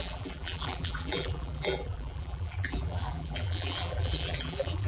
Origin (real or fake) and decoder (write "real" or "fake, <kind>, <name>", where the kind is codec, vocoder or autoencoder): fake, vocoder, BigVGAN v2